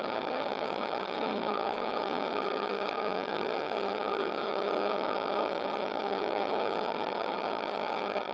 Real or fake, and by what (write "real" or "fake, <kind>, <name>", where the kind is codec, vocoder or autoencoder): fake, vocoder, HiFi-GAN